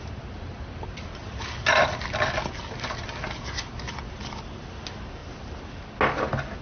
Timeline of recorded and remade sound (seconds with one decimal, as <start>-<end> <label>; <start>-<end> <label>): 0.0-6.6 recorded